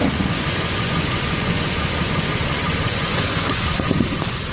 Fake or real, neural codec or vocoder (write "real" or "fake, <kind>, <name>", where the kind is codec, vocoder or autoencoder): fake, vocoder, Vocos